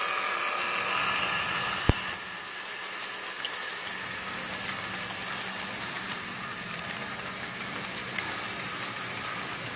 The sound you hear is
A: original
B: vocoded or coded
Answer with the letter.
A